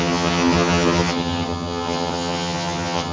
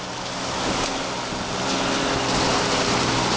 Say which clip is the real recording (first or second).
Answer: second